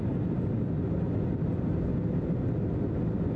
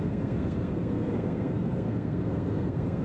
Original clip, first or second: first